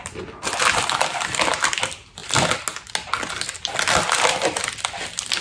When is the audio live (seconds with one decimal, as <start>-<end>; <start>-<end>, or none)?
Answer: 0.0-5.4